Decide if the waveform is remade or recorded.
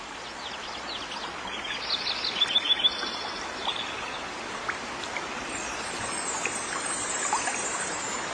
recorded